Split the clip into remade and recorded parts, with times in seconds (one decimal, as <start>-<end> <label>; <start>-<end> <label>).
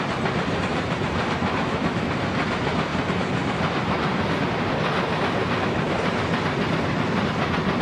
0.0-0.7 recorded; 0.7-1.3 remade; 1.3-7.8 recorded